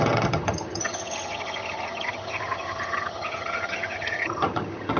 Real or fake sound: fake